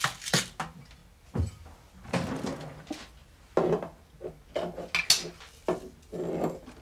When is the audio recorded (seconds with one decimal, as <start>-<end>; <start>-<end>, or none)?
0.0-6.8